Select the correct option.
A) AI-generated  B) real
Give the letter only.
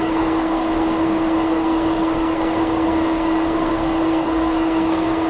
A